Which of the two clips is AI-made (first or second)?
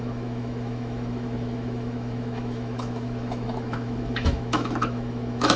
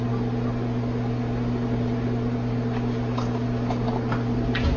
first